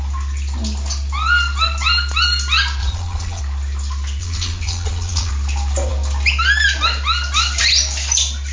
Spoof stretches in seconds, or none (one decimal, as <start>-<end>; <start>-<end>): 2.8-3.4; 4.2-5.3